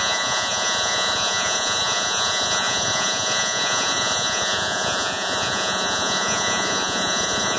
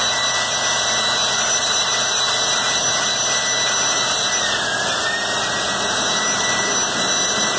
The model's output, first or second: first